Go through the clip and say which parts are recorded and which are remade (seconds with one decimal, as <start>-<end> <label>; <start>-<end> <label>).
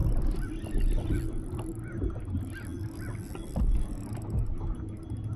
0.0-5.4 recorded